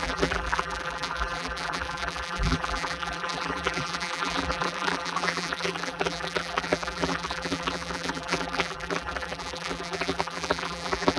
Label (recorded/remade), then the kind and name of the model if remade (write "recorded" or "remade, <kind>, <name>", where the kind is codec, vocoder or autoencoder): remade, vocoder, BigVGAN v2